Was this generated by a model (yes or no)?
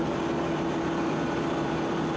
no